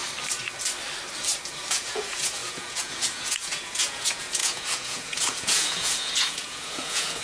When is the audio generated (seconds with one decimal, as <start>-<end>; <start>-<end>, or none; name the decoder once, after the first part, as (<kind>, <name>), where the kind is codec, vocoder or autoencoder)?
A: 1.7-7.2 (vocoder, Vocos)